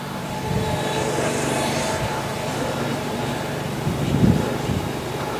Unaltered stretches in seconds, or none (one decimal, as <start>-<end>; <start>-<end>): none